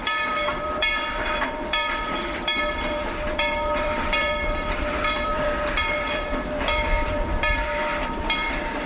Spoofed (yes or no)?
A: yes